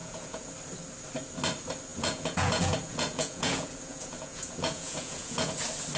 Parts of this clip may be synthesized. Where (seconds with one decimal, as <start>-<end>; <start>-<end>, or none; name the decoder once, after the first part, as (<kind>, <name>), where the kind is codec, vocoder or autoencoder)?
0.0-0.5 (vocoder, Vocos); 1.9-5.5